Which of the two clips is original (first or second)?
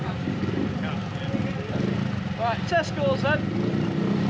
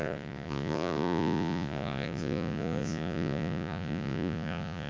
first